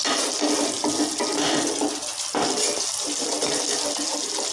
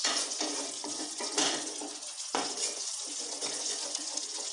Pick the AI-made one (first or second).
second